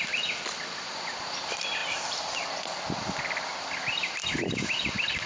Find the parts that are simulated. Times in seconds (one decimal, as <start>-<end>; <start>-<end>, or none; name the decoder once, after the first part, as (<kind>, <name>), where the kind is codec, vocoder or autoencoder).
none